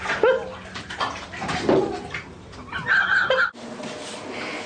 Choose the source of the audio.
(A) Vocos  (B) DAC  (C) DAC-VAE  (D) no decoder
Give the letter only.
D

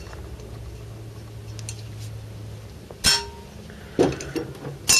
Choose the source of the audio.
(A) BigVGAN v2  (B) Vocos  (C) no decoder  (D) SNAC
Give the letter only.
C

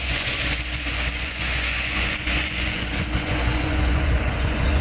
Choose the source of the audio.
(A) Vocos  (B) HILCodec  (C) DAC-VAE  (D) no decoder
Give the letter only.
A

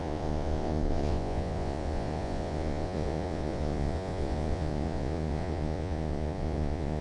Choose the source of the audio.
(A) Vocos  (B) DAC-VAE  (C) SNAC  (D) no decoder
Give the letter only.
A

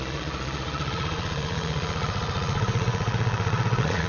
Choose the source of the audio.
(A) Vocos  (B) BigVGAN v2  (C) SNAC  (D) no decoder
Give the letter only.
A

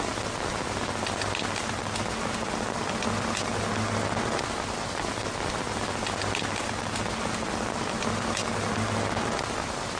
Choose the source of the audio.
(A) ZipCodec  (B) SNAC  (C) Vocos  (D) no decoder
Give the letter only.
D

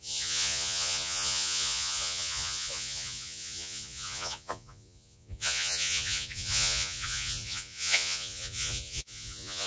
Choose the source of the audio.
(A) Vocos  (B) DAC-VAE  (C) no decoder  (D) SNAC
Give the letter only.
A